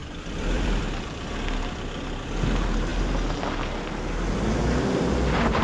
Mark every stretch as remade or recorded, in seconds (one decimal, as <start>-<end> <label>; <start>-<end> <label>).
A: 0.0-0.8 remade; 0.8-5.6 recorded